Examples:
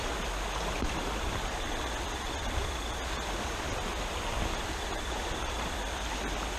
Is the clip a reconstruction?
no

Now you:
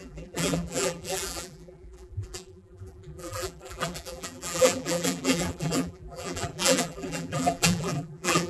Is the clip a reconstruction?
yes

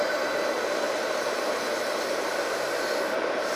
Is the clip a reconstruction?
yes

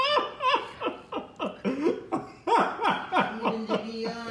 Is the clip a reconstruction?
no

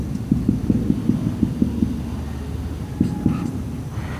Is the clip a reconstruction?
no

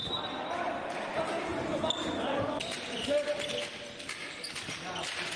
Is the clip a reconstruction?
no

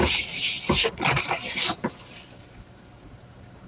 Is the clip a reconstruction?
yes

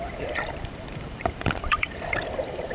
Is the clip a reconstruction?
yes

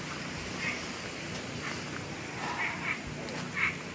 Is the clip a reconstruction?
no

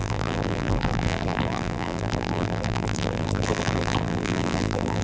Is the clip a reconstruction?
yes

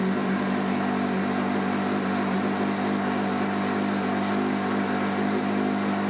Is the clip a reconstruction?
no